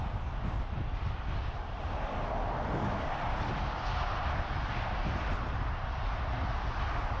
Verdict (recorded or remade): recorded